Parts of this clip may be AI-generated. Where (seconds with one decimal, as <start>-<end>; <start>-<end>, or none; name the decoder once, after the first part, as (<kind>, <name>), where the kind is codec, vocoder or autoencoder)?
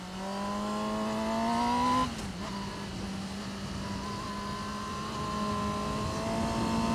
none